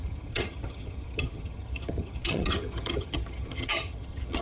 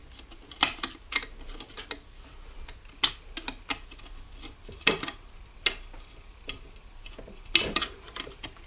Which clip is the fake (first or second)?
first